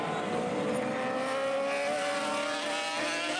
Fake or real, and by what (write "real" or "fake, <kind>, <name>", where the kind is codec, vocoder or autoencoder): real